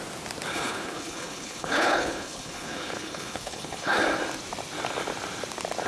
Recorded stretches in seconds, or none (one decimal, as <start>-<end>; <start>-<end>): 0.0-0.5; 4.0-5.9